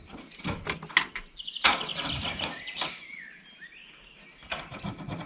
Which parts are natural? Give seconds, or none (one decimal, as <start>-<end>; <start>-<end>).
0.0-5.3